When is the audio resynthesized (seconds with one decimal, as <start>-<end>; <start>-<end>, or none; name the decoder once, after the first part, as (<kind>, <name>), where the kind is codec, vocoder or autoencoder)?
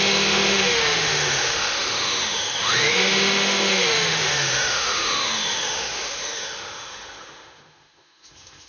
0.0-8.7 (autoencoder, DAC-VAE)